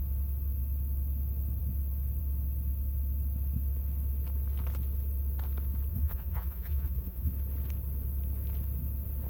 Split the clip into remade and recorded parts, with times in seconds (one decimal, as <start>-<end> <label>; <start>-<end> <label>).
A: 0.0-5.9 recorded; 5.9-7.3 remade; 7.3-9.3 recorded